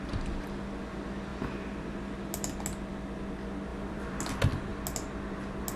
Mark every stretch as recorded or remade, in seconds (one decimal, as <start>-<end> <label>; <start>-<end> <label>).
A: 0.0-3.7 recorded; 3.7-4.2 remade; 4.2-5.8 recorded